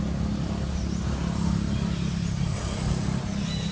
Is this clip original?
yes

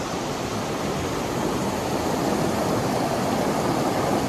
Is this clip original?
yes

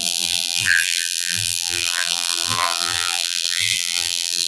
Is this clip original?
no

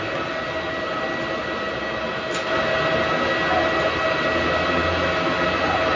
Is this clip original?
yes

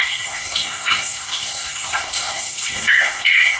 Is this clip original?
no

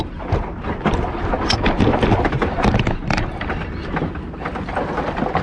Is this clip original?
yes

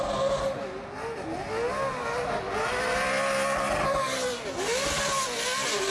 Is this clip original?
yes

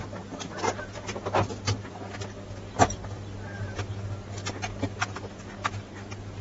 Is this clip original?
yes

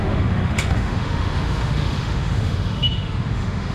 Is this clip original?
no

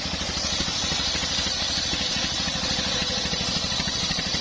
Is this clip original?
yes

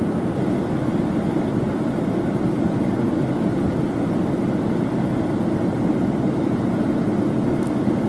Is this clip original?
yes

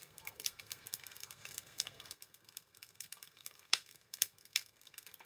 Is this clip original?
no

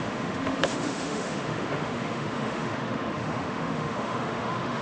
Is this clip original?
no